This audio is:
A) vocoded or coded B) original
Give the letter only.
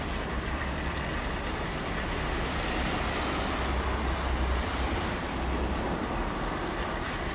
B